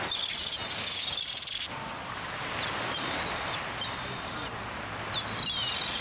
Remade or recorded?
recorded